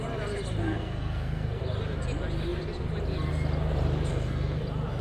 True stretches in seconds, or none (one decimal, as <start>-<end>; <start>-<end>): 0.0-0.6; 1.6-4.1; 4.6-5.0